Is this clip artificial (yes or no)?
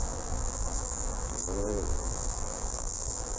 yes